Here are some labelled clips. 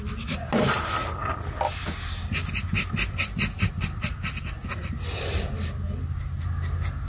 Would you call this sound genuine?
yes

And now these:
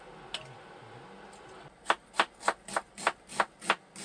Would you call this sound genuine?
yes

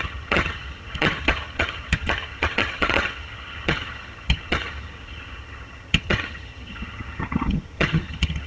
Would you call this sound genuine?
no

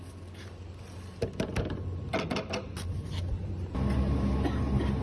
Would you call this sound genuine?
yes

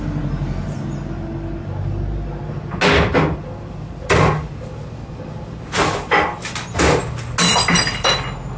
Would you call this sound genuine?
yes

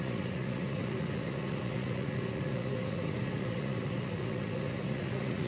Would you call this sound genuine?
no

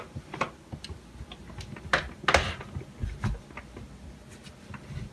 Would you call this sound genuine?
yes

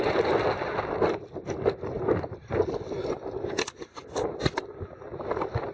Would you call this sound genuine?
yes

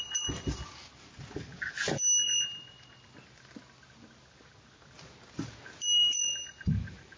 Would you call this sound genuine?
yes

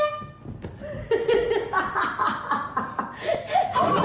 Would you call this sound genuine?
yes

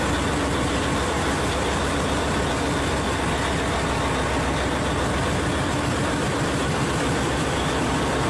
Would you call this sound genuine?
yes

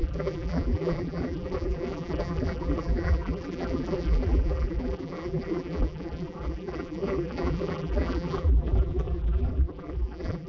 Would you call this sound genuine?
no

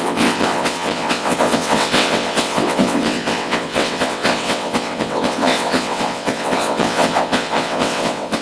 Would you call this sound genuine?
no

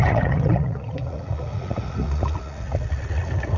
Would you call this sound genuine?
no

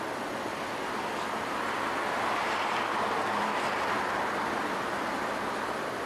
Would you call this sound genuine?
yes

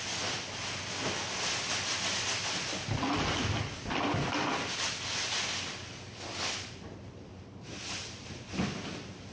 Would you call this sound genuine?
yes